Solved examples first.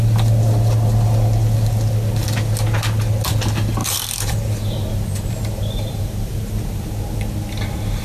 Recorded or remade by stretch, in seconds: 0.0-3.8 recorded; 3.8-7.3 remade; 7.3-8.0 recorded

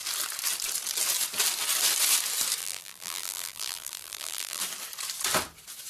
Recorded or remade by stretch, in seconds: 0.0-2.6 recorded; 2.6-4.6 remade; 4.6-5.9 recorded

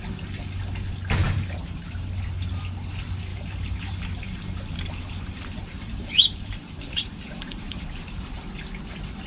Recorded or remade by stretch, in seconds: 0.0-1.2 recorded; 1.2-2.2 remade; 2.2-3.3 recorded; 3.3-8.5 remade; 8.5-9.3 recorded

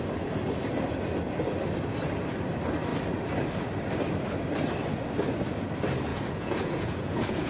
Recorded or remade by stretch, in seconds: 0.0-6.1 recorded; 6.1-7.5 remade

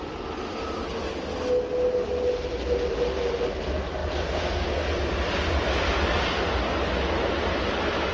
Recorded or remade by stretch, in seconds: 0.0-8.1 recorded

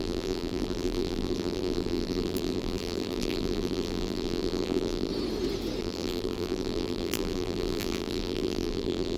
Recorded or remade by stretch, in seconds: 0.0-5.1 remade; 5.1-5.8 recorded; 5.8-9.2 remade